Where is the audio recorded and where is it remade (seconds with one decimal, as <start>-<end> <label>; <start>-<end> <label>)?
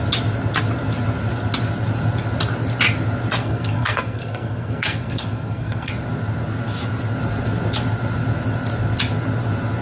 0.0-3.4 recorded; 3.4-5.9 remade; 5.9-9.8 recorded